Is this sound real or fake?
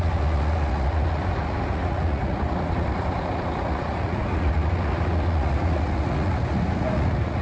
fake